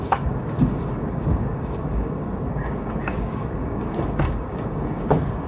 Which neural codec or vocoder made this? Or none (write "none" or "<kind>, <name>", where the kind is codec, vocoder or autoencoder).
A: codec, DAC